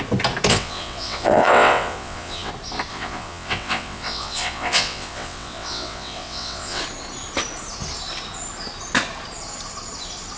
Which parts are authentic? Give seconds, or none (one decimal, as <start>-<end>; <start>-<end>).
0.0-0.5; 2.5-2.9; 6.8-10.4